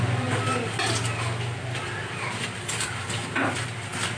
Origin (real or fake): real